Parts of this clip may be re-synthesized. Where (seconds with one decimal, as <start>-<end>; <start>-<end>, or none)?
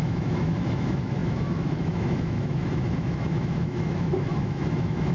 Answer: 0.0-5.1